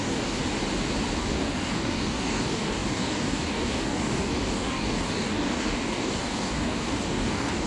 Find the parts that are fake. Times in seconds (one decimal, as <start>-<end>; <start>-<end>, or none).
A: 0.0-0.4; 1.2-7.7